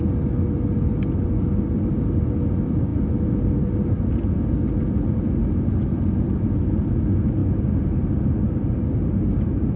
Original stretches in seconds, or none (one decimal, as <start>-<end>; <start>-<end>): 0.0-9.8